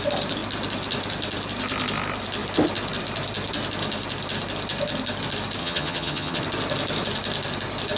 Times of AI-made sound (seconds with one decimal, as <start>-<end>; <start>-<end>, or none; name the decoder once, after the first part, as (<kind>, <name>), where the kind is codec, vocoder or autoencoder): 5.6-6.4 (vocoder, HiFi-GAN)